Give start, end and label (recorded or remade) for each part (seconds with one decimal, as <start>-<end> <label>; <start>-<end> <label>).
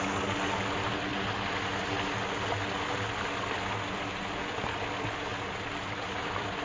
0.0-6.6 recorded